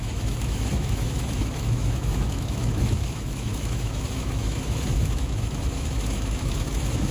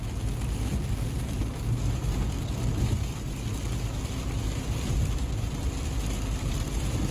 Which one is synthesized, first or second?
first